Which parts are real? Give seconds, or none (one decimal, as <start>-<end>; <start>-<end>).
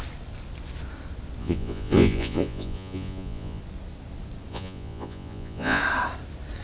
0.0-1.4; 3.6-4.5; 5.8-6.6